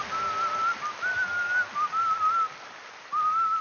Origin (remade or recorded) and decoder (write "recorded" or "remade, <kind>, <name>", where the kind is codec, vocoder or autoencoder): recorded